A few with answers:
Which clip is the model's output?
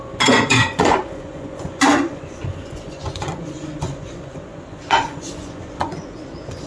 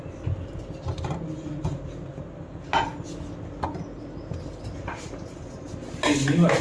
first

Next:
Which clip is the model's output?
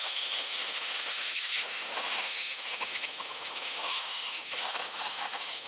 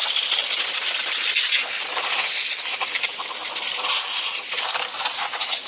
first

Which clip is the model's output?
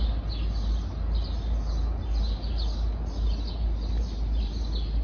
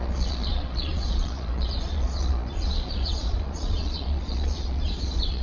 second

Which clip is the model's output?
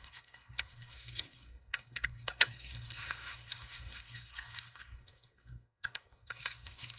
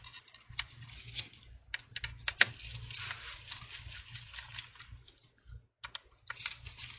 first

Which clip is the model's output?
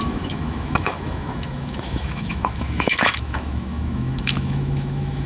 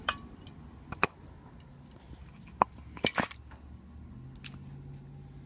first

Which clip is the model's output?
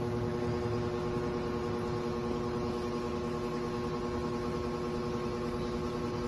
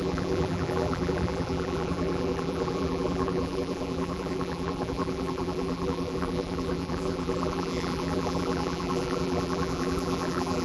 second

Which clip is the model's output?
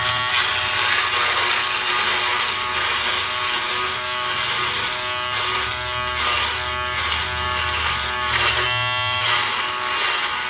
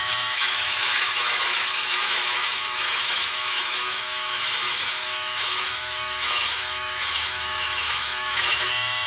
second